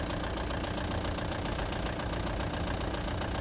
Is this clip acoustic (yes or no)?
yes